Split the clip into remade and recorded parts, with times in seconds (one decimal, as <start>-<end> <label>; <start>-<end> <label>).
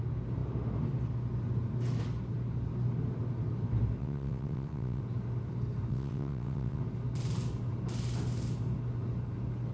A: 0.0-4.0 recorded; 4.0-5.0 remade; 5.0-5.9 recorded; 5.9-6.8 remade; 6.8-9.7 recorded